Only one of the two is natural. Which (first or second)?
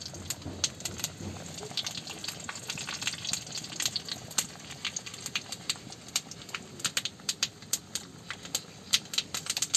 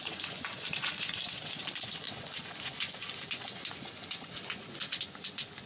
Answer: first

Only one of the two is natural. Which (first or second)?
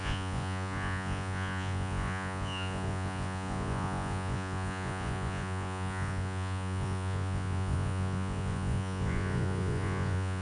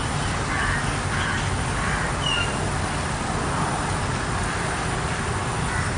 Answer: second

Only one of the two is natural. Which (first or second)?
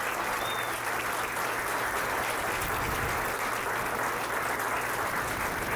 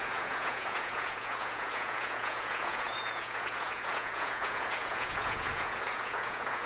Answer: first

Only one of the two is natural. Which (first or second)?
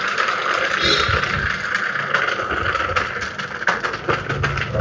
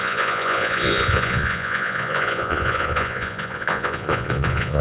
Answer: first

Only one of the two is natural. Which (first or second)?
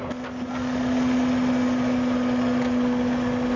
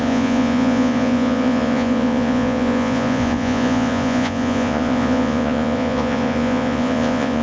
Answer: first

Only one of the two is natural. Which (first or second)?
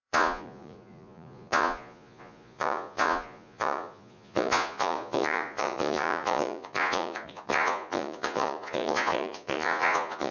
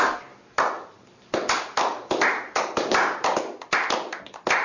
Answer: second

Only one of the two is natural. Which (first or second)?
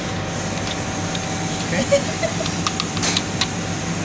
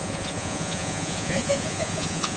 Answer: first